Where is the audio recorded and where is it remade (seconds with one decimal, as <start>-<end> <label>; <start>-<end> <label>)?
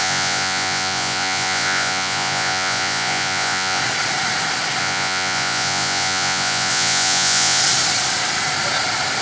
0.0-3.8 remade; 3.8-4.8 recorded; 4.8-7.6 remade; 7.6-9.2 recorded